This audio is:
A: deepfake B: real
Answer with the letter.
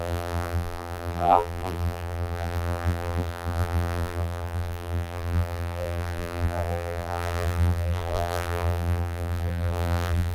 A